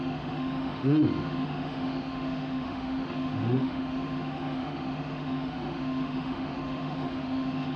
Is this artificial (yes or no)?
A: yes